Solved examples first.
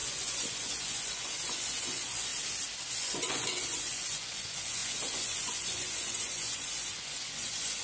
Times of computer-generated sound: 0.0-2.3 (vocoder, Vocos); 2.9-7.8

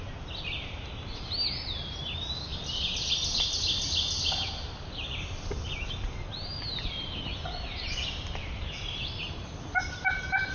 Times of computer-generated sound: none

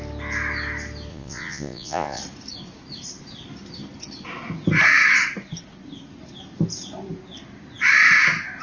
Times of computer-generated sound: 1.1-2.2 (vocoder, Vocos)

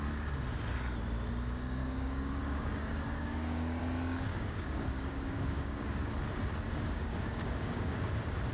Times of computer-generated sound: 1.8-3.8 (codec, DAC); 4.3-6.1; 6.7-8.1